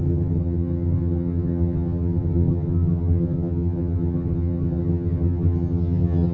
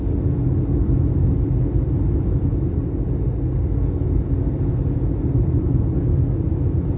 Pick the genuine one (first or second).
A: second